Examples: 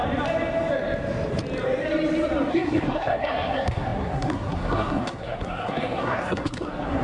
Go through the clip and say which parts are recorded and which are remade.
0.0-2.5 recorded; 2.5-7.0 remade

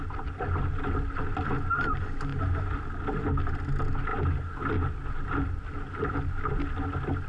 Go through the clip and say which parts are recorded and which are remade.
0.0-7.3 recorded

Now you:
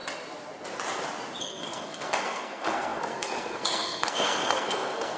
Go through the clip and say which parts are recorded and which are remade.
0.0-1.4 recorded; 1.4-5.2 remade

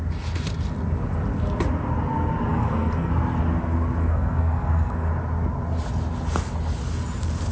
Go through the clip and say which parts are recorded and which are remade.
0.0-2.5 recorded; 2.5-3.1 remade; 3.1-4.0 recorded; 4.0-5.1 remade; 5.1-7.5 recorded